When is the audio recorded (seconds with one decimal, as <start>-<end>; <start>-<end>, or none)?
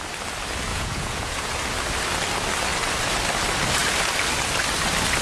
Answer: 0.0-0.7; 1.5-5.2